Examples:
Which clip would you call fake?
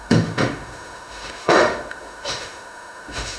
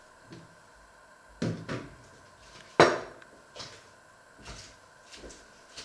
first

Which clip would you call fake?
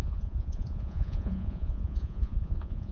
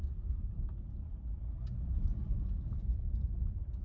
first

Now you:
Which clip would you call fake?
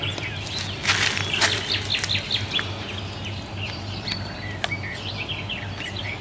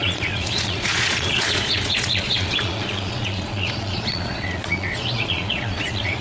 second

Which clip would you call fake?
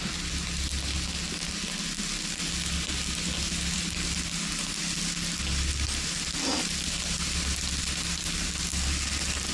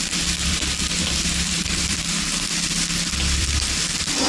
second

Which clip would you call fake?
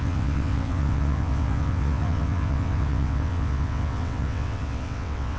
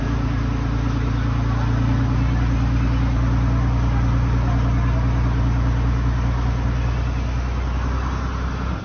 first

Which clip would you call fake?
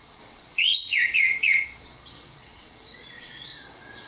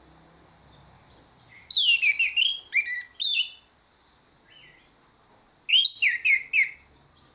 first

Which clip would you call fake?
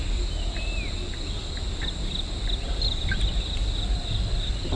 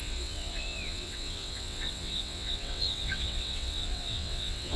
second